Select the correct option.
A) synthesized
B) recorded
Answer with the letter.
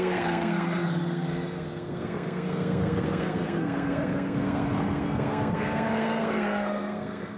A